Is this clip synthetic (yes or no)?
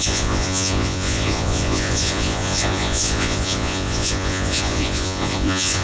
yes